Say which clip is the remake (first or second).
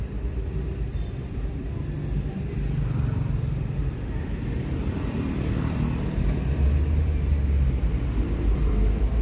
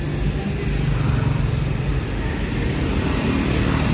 first